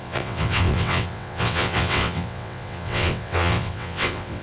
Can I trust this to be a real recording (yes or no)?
no